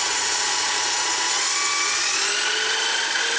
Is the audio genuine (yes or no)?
yes